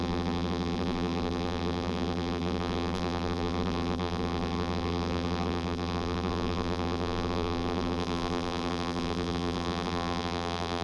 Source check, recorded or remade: remade